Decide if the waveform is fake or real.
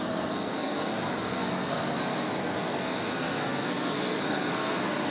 fake